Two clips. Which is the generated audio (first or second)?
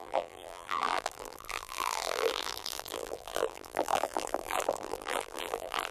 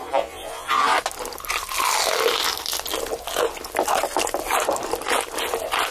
first